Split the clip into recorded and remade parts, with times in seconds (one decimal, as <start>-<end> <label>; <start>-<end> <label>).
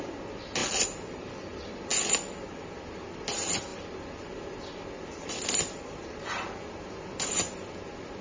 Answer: 0.0-8.2 recorded